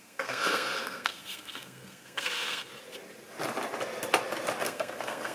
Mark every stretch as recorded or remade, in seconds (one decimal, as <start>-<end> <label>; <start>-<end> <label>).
0.0-2.7 remade; 2.7-4.6 recorded; 4.6-5.3 remade